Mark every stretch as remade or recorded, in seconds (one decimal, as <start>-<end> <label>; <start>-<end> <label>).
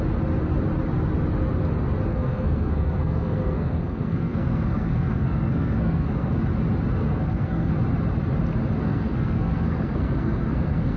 0.0-2.1 recorded; 2.1-6.4 remade; 6.4-7.0 recorded; 7.0-7.7 remade; 7.7-8.8 recorded; 8.8-11.0 remade